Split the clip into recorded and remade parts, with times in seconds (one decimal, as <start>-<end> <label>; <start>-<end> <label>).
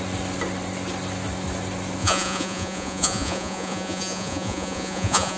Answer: 0.0-2.0 recorded; 2.0-5.4 remade